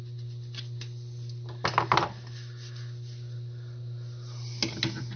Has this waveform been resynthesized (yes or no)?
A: no